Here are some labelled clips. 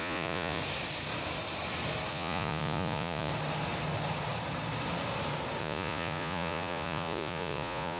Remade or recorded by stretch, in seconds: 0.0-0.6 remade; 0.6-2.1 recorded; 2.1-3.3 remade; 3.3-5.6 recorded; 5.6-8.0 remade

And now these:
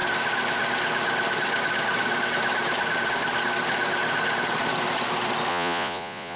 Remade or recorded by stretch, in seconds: 0.0-5.5 recorded; 5.5-6.4 remade

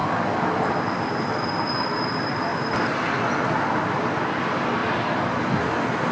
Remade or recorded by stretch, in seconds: 0.0-1.2 recorded; 1.2-2.5 remade; 2.5-3.8 recorded; 3.8-4.8 remade; 4.8-6.1 recorded

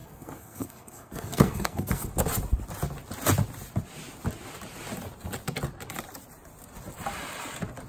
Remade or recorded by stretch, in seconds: 0.0-2.1 remade; 2.1-7.9 recorded

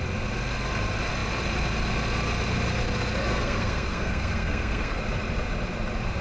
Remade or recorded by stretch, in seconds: 0.0-3.3 recorded; 3.3-5.0 remade; 5.0-6.2 recorded

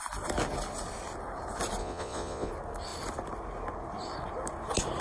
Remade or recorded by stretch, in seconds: 0.0-1.8 recorded; 1.8-2.5 remade; 2.5-5.0 recorded